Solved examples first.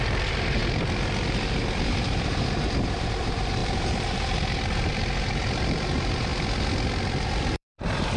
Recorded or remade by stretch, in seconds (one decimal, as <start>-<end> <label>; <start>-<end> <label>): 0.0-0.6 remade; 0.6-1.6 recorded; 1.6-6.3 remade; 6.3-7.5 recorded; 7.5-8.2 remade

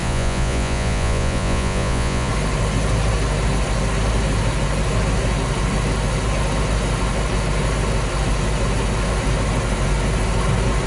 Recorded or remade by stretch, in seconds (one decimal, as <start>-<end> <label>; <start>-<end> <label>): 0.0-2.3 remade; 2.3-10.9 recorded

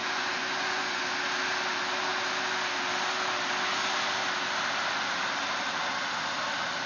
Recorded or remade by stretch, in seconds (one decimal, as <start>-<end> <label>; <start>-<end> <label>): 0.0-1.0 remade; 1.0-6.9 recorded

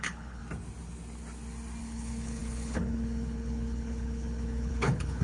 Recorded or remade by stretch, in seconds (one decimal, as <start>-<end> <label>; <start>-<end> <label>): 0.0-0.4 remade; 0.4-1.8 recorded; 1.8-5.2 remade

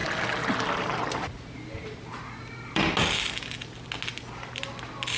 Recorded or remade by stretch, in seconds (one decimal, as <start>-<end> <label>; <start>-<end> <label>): 0.0-5.2 recorded

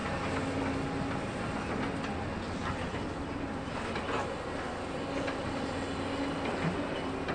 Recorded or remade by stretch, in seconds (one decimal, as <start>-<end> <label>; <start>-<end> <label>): 0.0-7.3 recorded